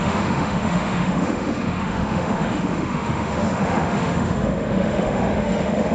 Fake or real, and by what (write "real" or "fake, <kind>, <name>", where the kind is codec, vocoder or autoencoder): fake, autoencoder, DAC-VAE